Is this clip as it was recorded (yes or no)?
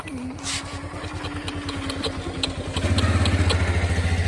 yes